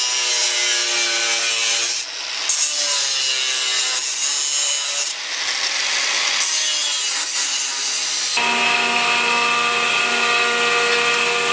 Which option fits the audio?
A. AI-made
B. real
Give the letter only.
B